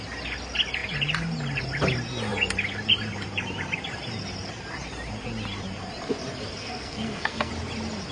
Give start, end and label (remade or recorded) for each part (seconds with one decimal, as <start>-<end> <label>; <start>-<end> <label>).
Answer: 0.0-6.6 recorded; 6.6-7.5 remade; 7.5-8.1 recorded